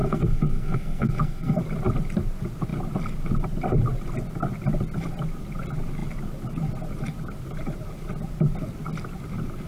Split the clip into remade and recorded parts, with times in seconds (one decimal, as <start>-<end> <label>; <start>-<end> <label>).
0.0-1.6 remade; 1.6-9.7 recorded